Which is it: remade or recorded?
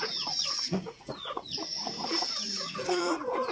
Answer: remade